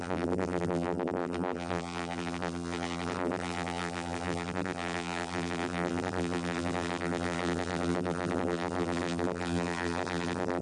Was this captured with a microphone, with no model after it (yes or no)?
no